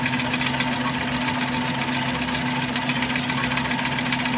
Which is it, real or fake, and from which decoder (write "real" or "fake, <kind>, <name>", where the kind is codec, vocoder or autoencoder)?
real